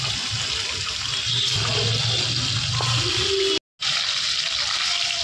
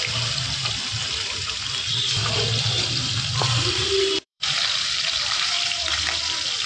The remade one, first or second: second